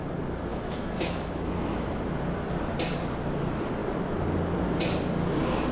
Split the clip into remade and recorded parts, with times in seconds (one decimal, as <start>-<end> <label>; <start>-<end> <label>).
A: 0.0-0.5 recorded; 0.5-2.0 remade; 2.0-5.7 recorded